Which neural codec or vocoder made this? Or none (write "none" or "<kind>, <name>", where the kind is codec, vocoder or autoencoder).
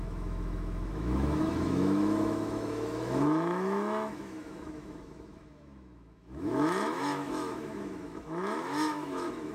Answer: autoencoder, DAC-VAE